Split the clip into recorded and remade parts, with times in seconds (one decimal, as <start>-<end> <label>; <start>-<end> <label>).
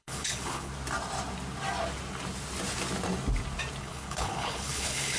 0.0-0.7 remade; 0.7-3.8 recorded; 3.8-5.2 remade